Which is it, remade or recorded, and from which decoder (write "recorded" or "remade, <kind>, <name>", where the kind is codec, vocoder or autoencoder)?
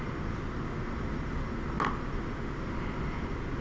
recorded